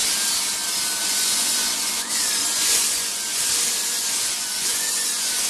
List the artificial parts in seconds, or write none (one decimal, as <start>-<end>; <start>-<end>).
1.0-3.4; 4.0-5.5